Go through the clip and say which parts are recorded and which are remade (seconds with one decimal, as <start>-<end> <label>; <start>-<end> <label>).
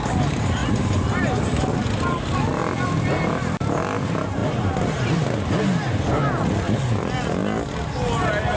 0.0-0.6 recorded; 0.6-1.7 remade; 1.7-2.6 recorded; 2.6-3.3 remade; 3.3-8.6 recorded